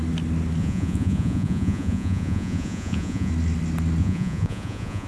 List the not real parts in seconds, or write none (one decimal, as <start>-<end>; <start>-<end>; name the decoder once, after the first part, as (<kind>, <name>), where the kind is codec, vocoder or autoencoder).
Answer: 0.6-3.3 (vocoder, Vocos); 4.0-5.1